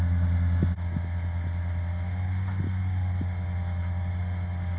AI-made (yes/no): no